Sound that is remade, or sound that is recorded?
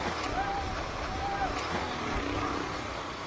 recorded